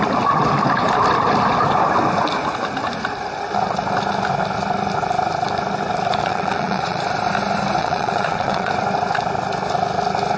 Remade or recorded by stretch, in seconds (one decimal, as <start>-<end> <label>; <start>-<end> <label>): 0.0-6.2 recorded; 6.2-7.0 remade; 7.0-7.8 recorded; 7.8-8.7 remade; 8.7-10.4 recorded